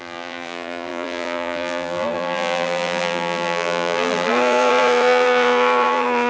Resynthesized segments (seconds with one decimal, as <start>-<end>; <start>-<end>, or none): 0.0-6.3